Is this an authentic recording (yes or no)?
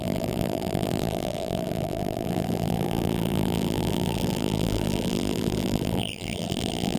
no